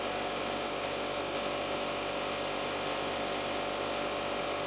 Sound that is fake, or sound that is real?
real